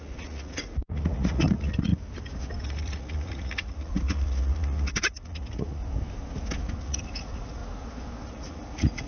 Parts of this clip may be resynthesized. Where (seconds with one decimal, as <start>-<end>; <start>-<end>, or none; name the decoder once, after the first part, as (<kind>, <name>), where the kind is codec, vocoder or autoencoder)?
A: 0.0-1.9 (vocoder, Vocos); 2.7-5.8; 6.8-7.6; 8.3-9.1